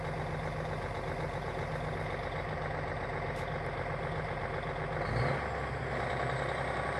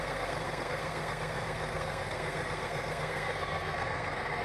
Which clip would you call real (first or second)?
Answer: first